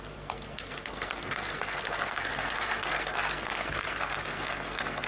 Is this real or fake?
fake